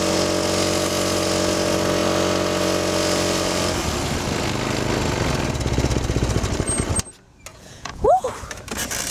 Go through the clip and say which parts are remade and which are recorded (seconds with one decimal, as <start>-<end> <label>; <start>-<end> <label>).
0.0-7.5 recorded; 7.5-8.3 remade; 8.3-9.1 recorded